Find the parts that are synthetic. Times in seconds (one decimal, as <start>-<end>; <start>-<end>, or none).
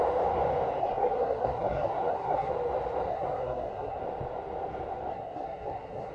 0.8-2.5; 3.1-4.0; 5.1-6.1